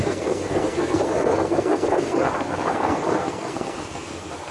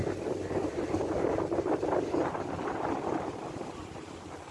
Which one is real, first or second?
second